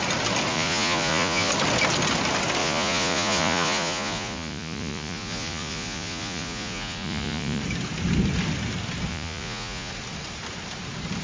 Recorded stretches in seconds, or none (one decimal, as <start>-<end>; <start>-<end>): 0.0-0.5; 1.5-2.6; 7.6-9.1; 9.9-11.2